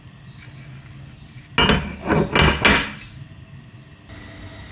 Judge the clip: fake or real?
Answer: real